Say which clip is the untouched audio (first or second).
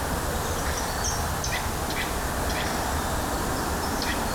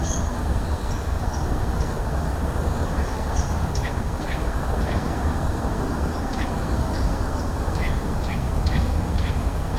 first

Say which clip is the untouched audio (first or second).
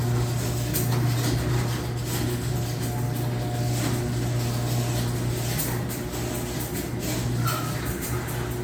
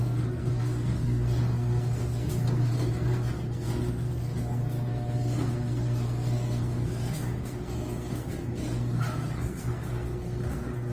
first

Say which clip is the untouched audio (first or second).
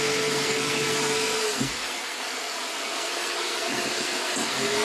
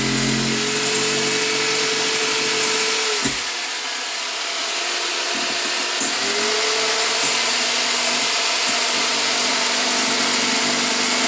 second